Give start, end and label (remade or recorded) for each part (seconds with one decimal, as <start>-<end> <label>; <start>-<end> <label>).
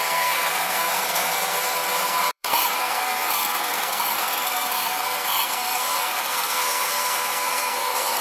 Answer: 0.0-8.2 remade